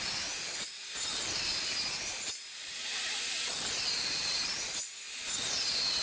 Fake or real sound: real